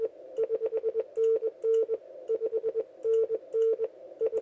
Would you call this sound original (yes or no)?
yes